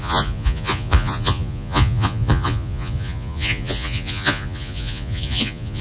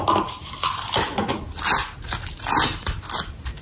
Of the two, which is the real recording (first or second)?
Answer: second